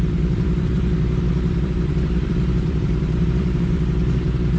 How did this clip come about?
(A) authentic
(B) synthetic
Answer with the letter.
B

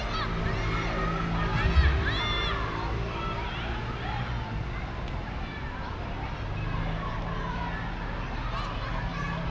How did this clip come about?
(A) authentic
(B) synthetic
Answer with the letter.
A